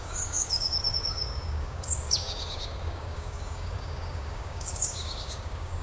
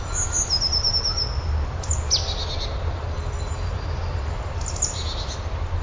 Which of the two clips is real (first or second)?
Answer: second